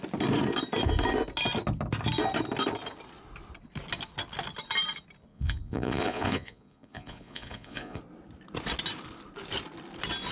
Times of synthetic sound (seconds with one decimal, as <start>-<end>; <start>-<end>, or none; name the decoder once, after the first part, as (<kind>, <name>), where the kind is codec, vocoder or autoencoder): 5.3-8.0 (vocoder, Vocos)

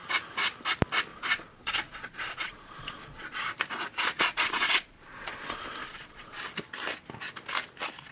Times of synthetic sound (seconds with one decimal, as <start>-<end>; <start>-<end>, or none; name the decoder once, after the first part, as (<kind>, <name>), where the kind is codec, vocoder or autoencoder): 1.1-3.5 (vocoder, Vocos); 4.2-6.4

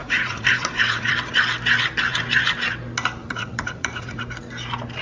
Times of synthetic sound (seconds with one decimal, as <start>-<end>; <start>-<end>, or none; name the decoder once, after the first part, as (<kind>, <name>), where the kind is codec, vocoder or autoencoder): 0.0-1.1 (vocoder, Vocos); 3.2-4.2

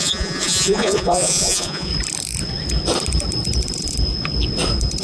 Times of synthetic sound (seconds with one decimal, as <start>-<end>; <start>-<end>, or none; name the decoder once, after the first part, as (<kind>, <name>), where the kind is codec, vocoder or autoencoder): 0.0-1.9 (vocoder, Vocos)

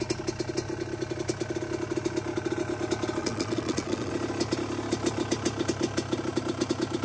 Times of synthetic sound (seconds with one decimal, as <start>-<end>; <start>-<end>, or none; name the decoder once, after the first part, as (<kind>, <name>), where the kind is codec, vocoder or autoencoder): 3.2-4.1 (vocoder, Vocos)

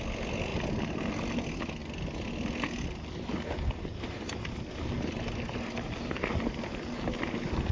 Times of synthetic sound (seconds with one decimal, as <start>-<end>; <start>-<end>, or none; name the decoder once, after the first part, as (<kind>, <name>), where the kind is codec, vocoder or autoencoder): none

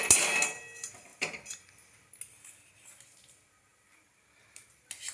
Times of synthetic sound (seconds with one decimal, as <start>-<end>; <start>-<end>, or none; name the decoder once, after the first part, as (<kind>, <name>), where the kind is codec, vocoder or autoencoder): none